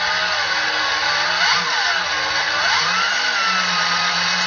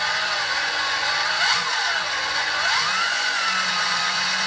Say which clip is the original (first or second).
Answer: first